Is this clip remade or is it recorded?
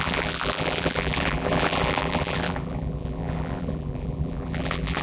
remade